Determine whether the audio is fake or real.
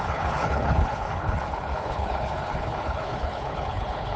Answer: fake